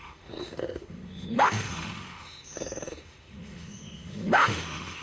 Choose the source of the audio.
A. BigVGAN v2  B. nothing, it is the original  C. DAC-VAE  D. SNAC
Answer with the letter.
C